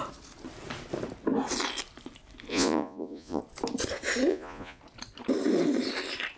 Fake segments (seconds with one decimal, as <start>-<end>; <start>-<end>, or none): 2.5-3.4; 4.3-4.8